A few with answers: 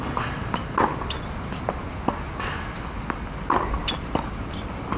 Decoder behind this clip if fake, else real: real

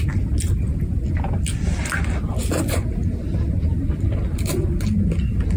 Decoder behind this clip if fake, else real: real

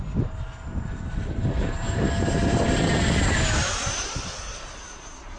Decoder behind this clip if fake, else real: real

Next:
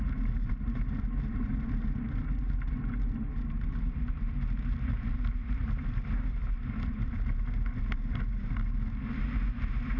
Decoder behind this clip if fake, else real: fake, vocoder, BigVGAN v2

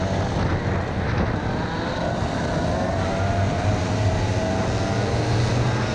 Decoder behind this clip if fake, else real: real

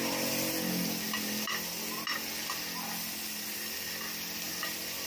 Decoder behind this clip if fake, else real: real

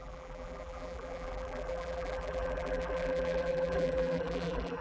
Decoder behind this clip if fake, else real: fake, vocoder, BigVGAN v2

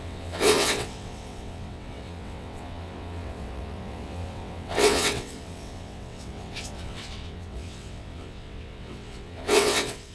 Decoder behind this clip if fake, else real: fake, vocoder, WaveNeXt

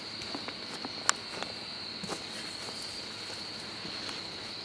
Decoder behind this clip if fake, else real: real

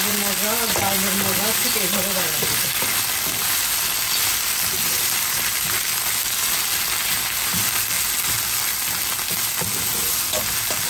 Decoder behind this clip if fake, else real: real